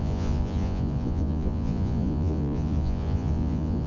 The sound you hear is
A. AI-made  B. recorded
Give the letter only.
A